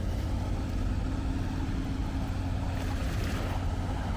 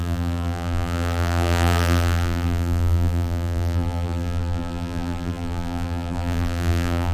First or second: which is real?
first